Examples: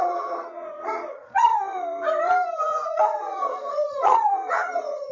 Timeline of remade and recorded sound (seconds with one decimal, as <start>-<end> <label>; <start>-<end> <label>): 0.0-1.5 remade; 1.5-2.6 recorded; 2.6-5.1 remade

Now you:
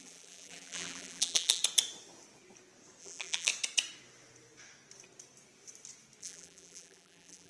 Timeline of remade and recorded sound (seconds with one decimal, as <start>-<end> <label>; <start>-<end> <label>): 0.0-1.6 remade; 1.6-3.0 recorded; 3.0-3.5 remade; 3.5-6.2 recorded; 6.2-7.5 remade

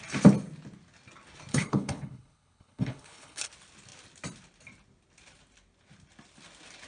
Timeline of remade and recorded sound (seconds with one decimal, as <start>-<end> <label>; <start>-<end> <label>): 0.0-1.5 recorded; 1.5-3.5 remade; 3.5-6.9 recorded